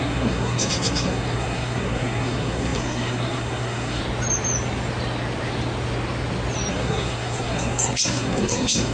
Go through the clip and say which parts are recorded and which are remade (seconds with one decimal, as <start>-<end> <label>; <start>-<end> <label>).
0.0-4.0 remade; 4.0-6.7 recorded; 6.7-8.9 remade